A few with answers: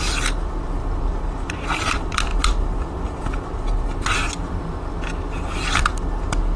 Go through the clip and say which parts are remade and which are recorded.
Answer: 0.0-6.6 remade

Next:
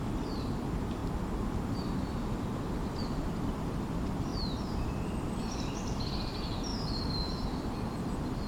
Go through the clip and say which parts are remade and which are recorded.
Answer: 0.0-1.0 remade; 1.0-3.0 recorded; 3.0-4.3 remade; 4.3-5.2 recorded; 5.2-8.5 remade

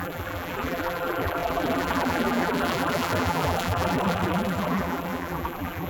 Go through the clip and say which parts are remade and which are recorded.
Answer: 0.0-5.9 remade

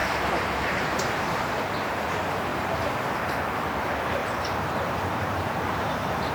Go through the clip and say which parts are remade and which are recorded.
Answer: 0.0-1.4 remade; 1.4-2.5 recorded; 2.5-3.1 remade; 3.1-4.2 recorded; 4.2-6.3 remade